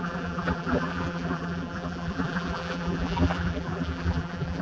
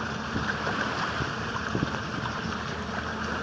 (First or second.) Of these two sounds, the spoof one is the first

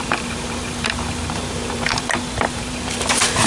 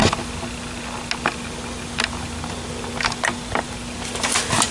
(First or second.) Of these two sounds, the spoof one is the first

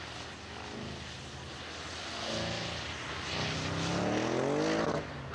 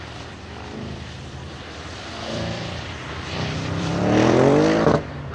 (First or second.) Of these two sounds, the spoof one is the second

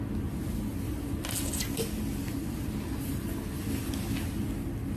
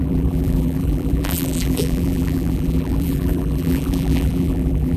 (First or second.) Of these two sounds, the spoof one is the second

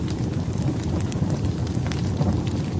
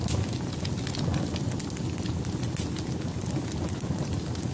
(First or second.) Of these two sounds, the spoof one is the first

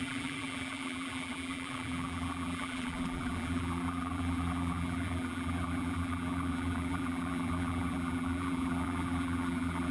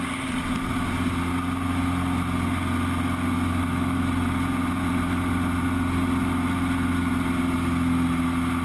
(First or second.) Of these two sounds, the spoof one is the first